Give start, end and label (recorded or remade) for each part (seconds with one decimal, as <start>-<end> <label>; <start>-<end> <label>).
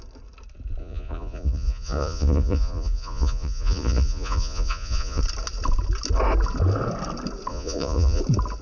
0.0-0.8 recorded; 0.8-5.2 remade; 5.2-7.5 recorded; 7.5-8.2 remade; 8.2-8.6 recorded